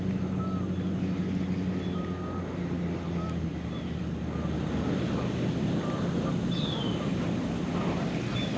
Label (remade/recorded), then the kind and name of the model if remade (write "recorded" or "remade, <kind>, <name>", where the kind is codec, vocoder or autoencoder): remade, vocoder, BigVGAN v2